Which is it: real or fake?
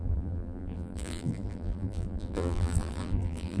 fake